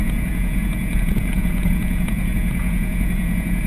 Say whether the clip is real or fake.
fake